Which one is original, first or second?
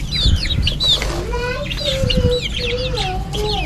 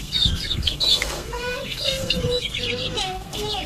first